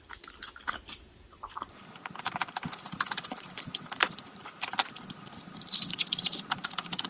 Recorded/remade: remade